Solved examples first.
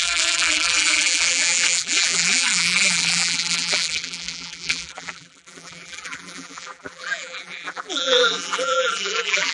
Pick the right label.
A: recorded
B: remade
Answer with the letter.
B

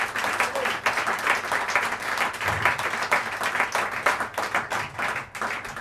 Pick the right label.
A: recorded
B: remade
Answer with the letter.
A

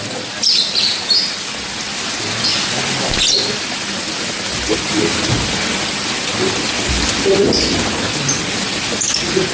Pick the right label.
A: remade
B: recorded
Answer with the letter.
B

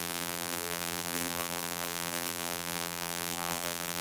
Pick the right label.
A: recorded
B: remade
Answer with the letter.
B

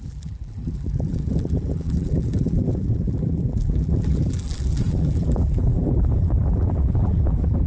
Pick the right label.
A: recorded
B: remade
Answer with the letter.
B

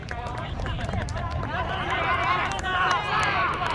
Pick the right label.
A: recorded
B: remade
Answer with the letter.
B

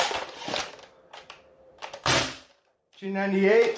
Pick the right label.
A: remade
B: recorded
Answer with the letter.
A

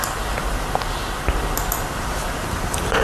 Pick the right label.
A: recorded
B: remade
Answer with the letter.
A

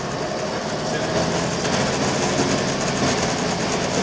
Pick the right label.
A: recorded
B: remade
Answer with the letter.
A